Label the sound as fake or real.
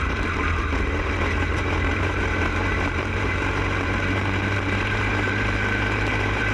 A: fake